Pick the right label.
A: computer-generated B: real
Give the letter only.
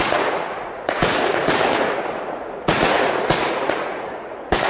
A